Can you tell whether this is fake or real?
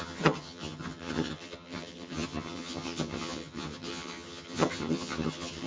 fake